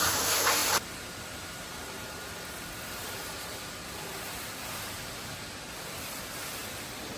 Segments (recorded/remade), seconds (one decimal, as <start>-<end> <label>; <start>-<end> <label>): 0.0-4.1 remade; 4.1-6.1 recorded; 6.1-6.6 remade; 6.6-7.2 recorded